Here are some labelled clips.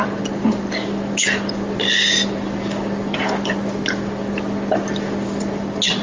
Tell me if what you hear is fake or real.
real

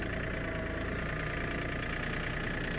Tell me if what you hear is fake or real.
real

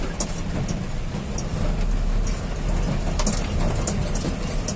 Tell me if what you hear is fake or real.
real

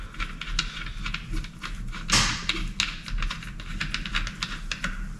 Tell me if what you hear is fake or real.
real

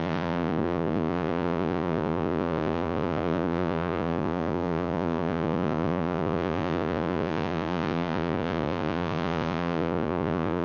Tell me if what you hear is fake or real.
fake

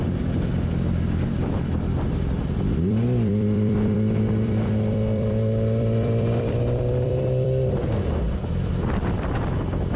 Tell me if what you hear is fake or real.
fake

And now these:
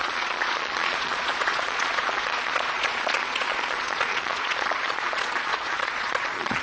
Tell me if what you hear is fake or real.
fake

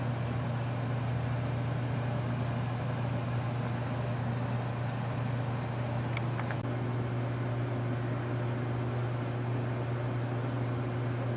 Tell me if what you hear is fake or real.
real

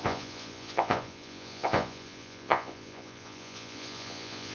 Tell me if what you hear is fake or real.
fake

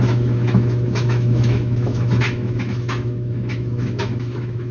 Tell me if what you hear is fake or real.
fake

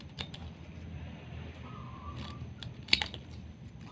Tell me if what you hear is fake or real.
fake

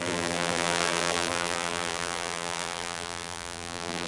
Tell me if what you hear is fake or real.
fake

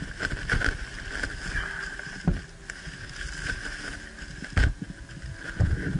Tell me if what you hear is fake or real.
real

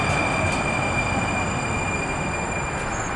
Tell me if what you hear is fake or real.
real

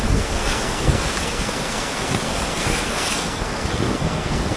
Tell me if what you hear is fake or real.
fake